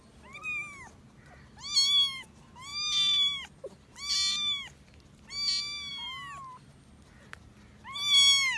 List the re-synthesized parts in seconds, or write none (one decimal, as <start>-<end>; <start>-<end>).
none